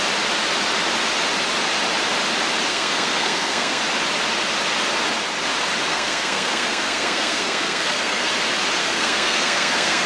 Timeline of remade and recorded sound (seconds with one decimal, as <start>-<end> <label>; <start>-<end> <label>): 0.0-2.7 recorded; 2.7-3.8 remade; 3.8-5.9 recorded; 5.9-8.3 remade; 8.3-8.8 recorded; 8.8-10.1 remade